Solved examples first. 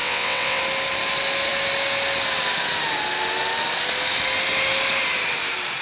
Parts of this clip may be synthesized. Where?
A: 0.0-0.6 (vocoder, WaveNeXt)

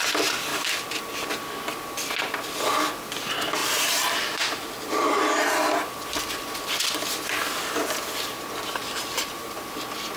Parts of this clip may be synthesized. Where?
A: 0.5-1.3 (vocoder, BigVGAN v2); 3.6-5.5; 8.8-9.3

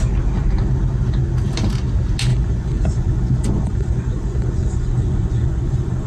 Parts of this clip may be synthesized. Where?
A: 2.3-6.1 (vocoder, Vocos)